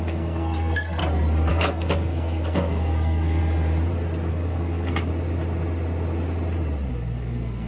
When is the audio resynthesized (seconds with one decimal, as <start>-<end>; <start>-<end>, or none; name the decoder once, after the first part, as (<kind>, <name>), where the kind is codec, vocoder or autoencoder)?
0.0-1.0 (codec, SNAC); 1.5-3.4; 4.3-5.1; 6.9-7.7